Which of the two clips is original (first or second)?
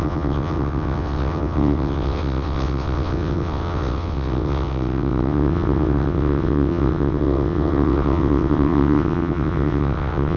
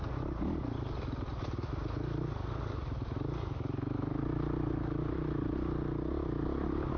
second